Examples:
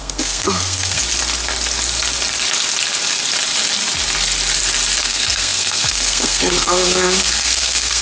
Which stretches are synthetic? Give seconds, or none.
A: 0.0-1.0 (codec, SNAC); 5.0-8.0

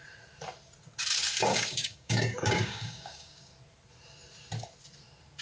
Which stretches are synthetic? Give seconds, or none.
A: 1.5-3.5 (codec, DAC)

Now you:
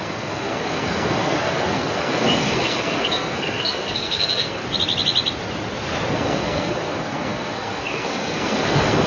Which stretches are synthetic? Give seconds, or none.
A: 0.0-4.6 (codec, SNAC); 6.1-9.1